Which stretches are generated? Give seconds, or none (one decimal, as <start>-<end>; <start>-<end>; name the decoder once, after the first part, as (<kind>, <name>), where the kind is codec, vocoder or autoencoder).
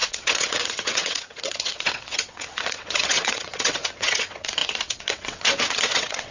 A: 0.0-6.3 (vocoder, WaveNeXt)